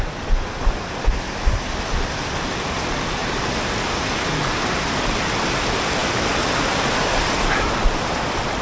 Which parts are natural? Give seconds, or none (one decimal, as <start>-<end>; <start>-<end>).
0.0-8.6